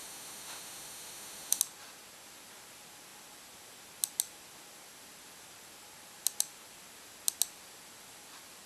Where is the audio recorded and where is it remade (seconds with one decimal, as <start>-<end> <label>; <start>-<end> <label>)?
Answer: 0.0-1.6 remade; 1.6-8.7 recorded

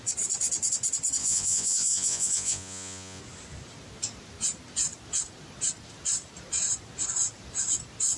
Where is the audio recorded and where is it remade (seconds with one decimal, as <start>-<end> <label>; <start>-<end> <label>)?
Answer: 0.0-1.2 recorded; 1.2-3.2 remade; 3.2-8.2 recorded

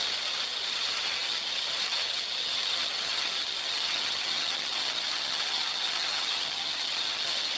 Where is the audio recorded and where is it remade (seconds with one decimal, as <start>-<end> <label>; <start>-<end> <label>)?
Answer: 0.0-7.6 remade

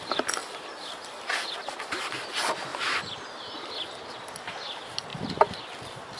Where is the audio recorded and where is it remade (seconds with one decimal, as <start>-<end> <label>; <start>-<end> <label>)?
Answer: 0.0-5.1 recorded; 5.1-6.2 remade

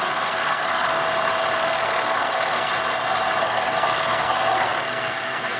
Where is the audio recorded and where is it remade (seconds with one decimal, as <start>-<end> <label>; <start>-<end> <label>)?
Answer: 0.0-1.0 remade; 1.0-1.6 recorded; 1.6-2.7 remade; 2.7-3.4 recorded; 3.4-5.6 remade

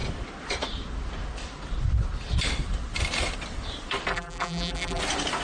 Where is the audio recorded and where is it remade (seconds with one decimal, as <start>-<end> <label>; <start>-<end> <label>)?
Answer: 0.0-4.1 recorded; 4.1-5.0 remade; 5.0-5.4 recorded

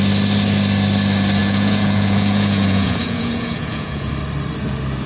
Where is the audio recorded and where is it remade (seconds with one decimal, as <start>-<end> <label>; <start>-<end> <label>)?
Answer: 0.0-1.4 recorded; 1.4-4.1 remade; 4.1-5.1 recorded

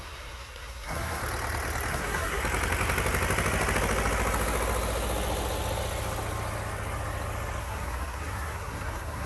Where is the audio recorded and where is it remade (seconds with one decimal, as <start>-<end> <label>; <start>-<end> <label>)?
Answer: 0.0-1.2 remade; 1.2-1.9 recorded; 1.9-2.4 remade; 2.4-7.6 recorded; 7.6-9.3 remade